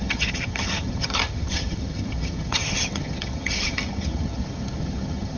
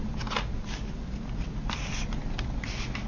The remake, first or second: first